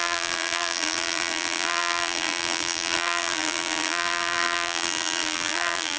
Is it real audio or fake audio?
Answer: fake